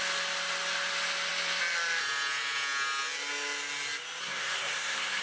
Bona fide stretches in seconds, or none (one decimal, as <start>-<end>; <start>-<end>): 0.0-4.2